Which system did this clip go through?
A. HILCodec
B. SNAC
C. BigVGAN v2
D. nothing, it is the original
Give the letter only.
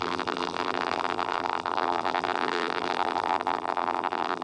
C